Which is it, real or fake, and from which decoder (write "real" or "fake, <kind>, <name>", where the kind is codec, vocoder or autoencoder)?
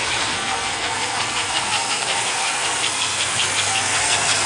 fake, codec, SNAC